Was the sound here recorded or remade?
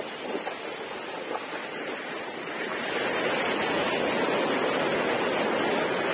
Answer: recorded